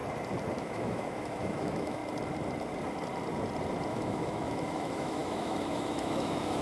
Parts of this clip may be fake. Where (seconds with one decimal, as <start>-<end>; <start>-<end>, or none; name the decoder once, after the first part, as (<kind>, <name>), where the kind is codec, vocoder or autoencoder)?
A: 0.6-2.0 (autoencoder, DAC-VAE); 3.9-6.6